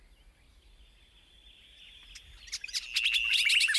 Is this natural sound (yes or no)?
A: yes